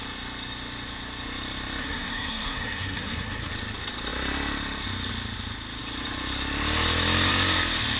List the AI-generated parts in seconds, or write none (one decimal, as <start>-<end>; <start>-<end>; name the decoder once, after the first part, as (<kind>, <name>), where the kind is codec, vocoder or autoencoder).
1.8-3.5 (codec, SNAC)